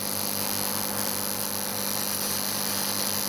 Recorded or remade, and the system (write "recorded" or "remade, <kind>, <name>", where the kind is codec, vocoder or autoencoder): recorded